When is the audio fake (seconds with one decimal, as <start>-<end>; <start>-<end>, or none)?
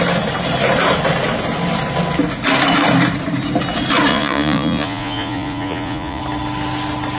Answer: 4.1-6.2